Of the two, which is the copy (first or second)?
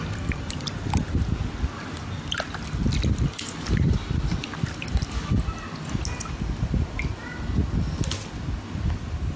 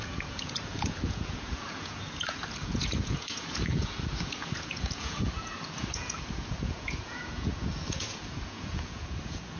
second